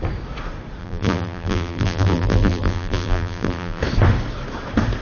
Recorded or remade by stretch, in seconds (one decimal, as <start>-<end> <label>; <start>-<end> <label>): 0.0-0.8 recorded; 0.8-3.8 remade; 3.8-5.0 recorded